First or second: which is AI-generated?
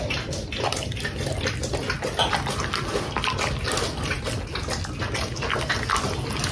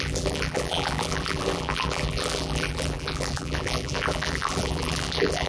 second